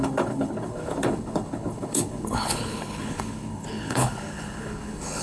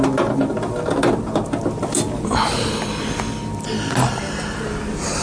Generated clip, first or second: first